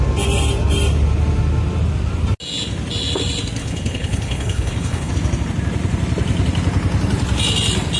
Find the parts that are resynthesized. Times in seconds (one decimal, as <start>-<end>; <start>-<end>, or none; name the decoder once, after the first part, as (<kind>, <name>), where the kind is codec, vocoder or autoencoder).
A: 3.6-5.1 (codec, HILCodec)